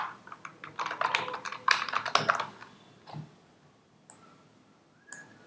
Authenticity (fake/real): real